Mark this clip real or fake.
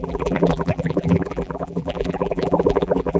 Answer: fake